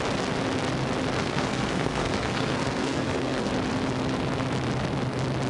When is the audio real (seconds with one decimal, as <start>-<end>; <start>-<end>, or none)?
0.0-1.2; 3.5-5.5